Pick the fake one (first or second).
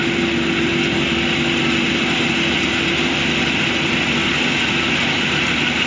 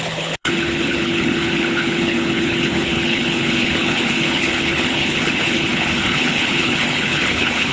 second